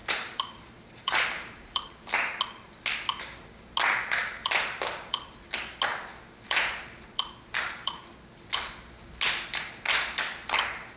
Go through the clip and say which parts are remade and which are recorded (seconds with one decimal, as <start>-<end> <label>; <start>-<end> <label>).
0.0-1.9 remade; 1.9-4.2 recorded; 4.2-5.2 remade; 5.2-6.1 recorded; 6.1-8.0 remade; 8.0-11.0 recorded